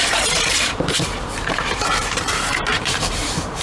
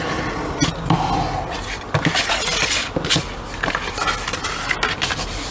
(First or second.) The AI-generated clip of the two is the first